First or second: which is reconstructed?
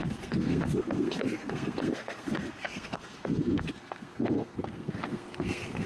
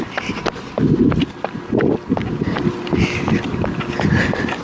first